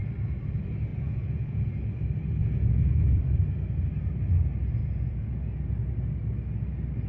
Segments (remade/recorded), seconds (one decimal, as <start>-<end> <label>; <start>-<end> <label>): 0.0-0.9 recorded; 0.9-1.6 remade; 1.6-2.4 recorded; 2.4-3.2 remade; 3.2-4.8 recorded; 4.8-5.3 remade; 5.3-7.1 recorded